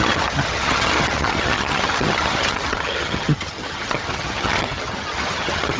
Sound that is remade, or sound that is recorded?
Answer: remade